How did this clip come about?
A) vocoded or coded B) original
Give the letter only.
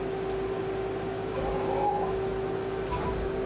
B